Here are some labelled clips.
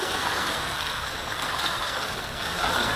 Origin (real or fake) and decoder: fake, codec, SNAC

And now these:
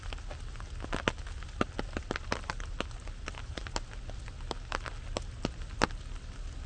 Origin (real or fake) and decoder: real